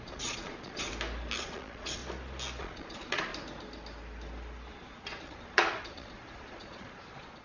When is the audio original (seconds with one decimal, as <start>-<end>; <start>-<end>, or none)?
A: 0.9-1.4; 2.0-2.6; 3.3-4.7

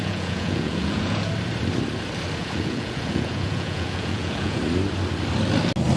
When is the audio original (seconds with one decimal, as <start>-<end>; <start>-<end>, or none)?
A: 1.3-2.4; 4.6-6.0